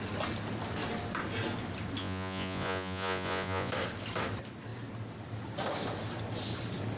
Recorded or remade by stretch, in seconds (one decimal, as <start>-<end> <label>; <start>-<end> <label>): 0.0-2.0 recorded; 2.0-3.7 remade; 3.7-7.0 recorded